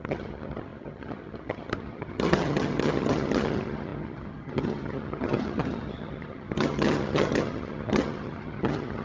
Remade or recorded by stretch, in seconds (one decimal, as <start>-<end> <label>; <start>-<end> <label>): 0.0-9.0 remade